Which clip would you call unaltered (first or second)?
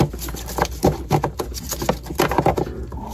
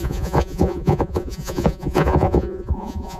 first